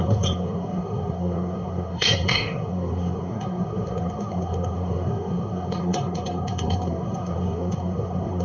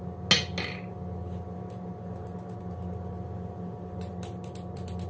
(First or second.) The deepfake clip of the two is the first